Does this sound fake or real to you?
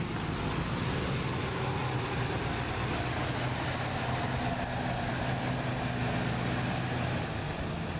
real